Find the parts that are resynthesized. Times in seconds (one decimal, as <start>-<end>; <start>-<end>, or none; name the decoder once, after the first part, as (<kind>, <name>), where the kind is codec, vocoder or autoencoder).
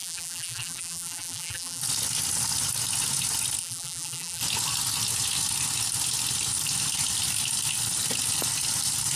0.0-1.8 (vocoder, BigVGAN v2); 3.6-4.4